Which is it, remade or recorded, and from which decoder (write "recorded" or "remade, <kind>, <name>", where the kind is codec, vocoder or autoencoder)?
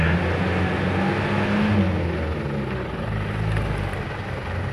recorded